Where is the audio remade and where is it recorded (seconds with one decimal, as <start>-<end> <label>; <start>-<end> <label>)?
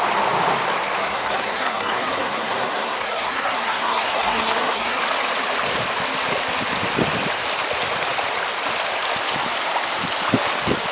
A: 0.0-1.0 recorded; 1.0-5.0 remade; 5.0-10.9 recorded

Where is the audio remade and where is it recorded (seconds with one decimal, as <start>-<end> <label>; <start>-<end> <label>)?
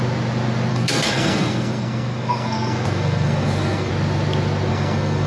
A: 0.0-0.7 recorded; 0.7-3.9 remade; 3.9-4.7 recorded; 4.7-5.3 remade